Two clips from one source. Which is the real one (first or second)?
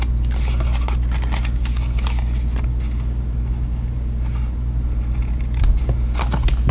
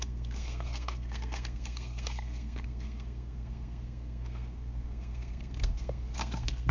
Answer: first